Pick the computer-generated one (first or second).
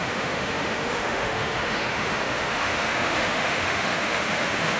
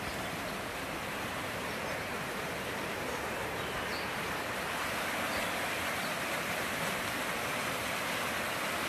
first